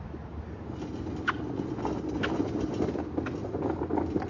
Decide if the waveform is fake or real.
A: real